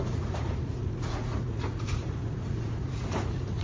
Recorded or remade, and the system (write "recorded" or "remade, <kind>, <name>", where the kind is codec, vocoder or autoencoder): remade, vocoder, Vocos